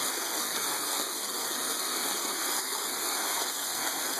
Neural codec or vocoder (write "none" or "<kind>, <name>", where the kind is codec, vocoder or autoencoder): codec, SNAC